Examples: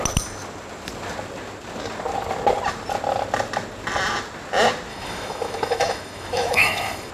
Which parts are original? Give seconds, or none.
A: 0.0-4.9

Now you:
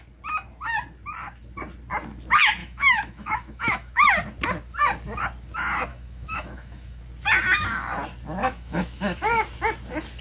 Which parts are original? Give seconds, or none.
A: 0.0-2.6; 4.1-5.9; 7.0-8.4; 9.2-10.2

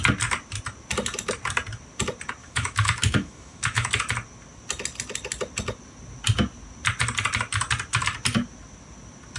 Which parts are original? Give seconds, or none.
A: 0.0-2.4; 3.9-9.4

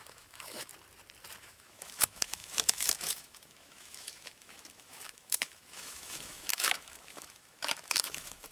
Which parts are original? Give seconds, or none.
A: 0.7-1.4

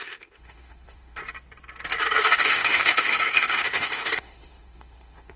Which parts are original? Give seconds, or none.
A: 1.2-2.2

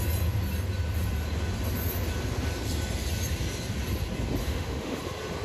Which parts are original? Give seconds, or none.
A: 0.0-4.4; 5.0-5.4